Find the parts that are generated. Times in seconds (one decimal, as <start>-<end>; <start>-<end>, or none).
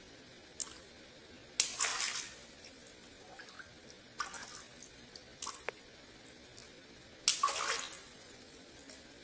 8.0-8.7